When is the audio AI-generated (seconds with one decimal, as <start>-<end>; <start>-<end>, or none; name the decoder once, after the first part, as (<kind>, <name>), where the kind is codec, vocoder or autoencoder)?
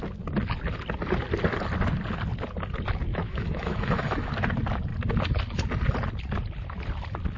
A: 3.1-4.3 (autoencoder, DAC-VAE)